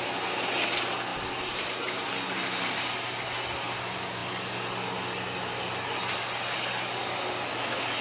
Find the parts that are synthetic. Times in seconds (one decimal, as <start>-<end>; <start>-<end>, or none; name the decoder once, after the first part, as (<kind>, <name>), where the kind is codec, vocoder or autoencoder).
none